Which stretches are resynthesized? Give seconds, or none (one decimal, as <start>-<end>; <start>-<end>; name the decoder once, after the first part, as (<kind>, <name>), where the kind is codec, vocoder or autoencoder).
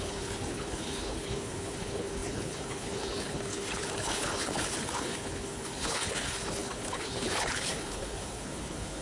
0.0-9.0 (codec, HILCodec)